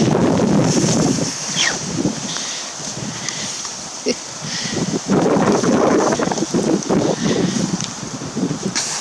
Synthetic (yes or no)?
yes